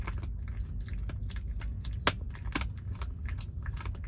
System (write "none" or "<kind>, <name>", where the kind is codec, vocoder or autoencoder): none